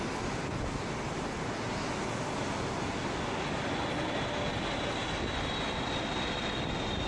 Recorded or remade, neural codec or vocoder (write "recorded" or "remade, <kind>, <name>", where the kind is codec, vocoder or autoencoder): recorded